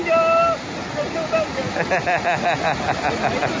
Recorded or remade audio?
recorded